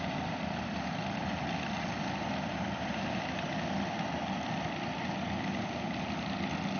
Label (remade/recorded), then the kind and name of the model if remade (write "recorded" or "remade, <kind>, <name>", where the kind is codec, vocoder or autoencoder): recorded